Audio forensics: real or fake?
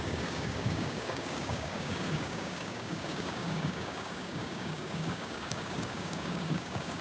fake